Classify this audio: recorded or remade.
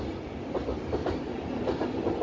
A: recorded